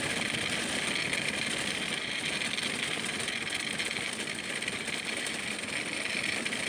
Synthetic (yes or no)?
no